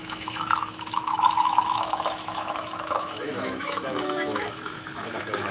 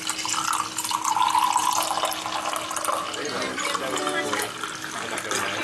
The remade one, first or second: first